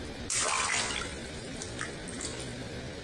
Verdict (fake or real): real